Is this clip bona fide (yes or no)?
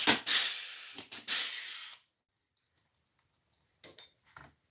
yes